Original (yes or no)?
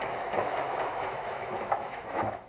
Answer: no